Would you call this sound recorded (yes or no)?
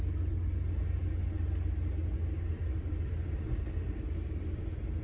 yes